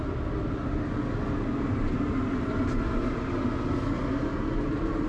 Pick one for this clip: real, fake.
real